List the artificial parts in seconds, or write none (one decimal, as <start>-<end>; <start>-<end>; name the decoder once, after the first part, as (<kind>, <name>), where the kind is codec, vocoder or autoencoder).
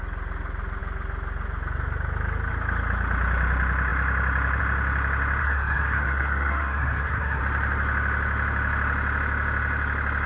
5.4-7.4 (codec, SNAC)